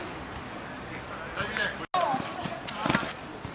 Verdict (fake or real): real